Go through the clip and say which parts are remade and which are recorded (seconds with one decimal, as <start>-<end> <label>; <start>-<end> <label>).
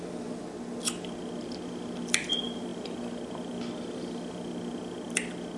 0.0-5.6 recorded